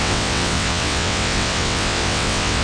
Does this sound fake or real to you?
fake